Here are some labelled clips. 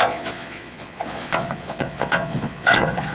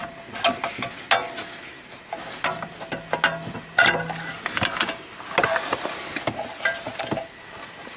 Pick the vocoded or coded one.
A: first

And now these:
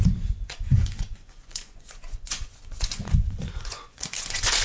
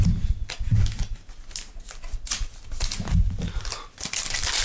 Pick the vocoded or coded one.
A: first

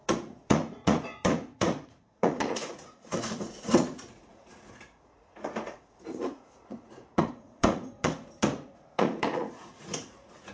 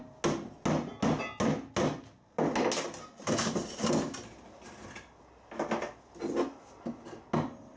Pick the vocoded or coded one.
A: first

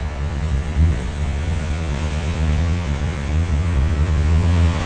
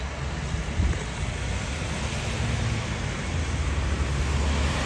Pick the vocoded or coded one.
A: first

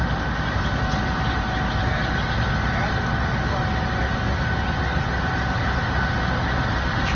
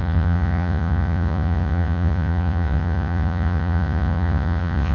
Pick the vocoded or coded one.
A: second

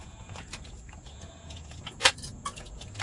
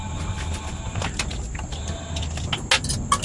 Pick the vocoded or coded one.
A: first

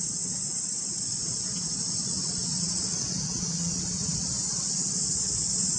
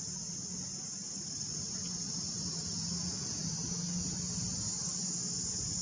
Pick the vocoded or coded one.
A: first